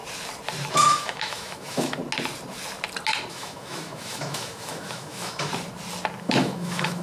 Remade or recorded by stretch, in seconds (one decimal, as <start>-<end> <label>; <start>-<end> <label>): 0.0-0.7 recorded; 0.7-2.0 remade; 2.0-3.3 recorded; 3.3-5.5 remade; 5.5-6.2 recorded; 6.2-7.0 remade